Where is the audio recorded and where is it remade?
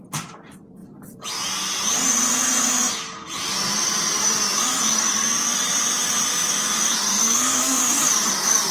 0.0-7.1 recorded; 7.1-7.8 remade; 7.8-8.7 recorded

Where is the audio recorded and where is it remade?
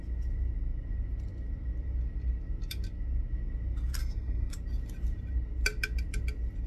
0.0-4.0 recorded; 4.0-4.5 remade; 4.5-6.7 recorded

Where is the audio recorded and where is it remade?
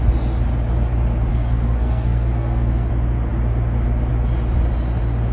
0.0-1.3 recorded; 1.3-2.9 remade; 2.9-5.3 recorded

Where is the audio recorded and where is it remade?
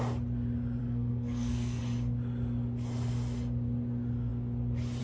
0.0-0.8 recorded; 0.8-1.8 remade; 1.8-5.0 recorded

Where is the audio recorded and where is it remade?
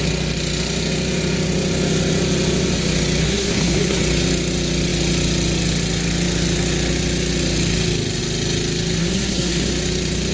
0.0-3.2 recorded; 3.2-4.0 remade; 4.0-9.0 recorded; 9.0-9.7 remade; 9.7-10.3 recorded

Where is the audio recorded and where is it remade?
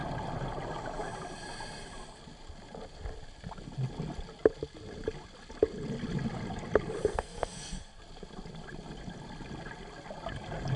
0.0-7.1 recorded; 7.1-8.0 remade; 8.0-10.8 recorded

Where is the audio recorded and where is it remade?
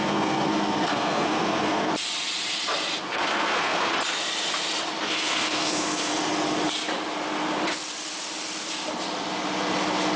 0.0-1.9 remade; 1.9-3.0 recorded; 3.0-3.9 remade; 3.9-5.1 recorded; 5.1-6.1 remade; 6.1-10.2 recorded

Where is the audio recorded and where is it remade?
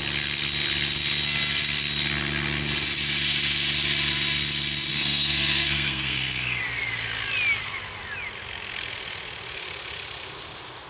0.0-4.9 recorded; 4.9-6.6 remade; 6.6-10.9 recorded